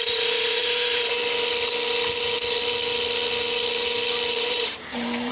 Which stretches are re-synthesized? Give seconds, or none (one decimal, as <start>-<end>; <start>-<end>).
0.0-1.2; 4.4-5.3